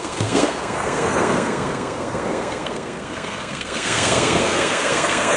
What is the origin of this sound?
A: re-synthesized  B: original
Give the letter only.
A